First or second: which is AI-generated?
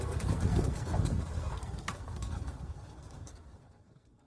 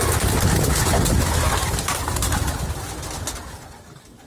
first